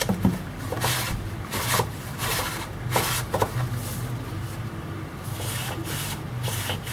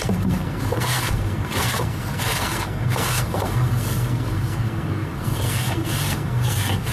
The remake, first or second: second